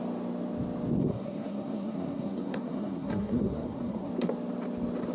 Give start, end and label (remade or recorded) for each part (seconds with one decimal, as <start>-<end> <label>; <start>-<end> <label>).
0.0-1.0 recorded; 1.0-4.1 remade; 4.1-5.1 recorded